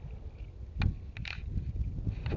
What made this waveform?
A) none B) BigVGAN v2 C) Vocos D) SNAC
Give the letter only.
A